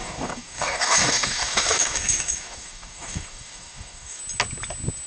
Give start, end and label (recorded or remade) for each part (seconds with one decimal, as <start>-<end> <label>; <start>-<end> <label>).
0.0-4.2 remade; 4.2-5.1 recorded